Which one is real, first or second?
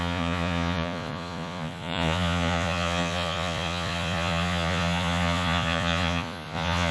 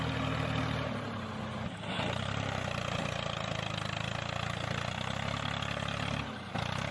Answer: second